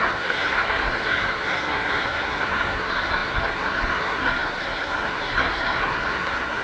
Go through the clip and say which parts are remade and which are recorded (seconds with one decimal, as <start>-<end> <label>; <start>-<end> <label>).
0.0-6.6 remade